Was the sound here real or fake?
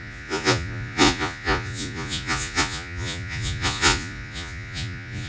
fake